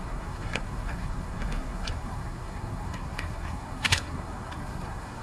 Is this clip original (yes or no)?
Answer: no